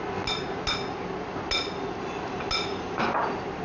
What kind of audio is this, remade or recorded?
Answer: recorded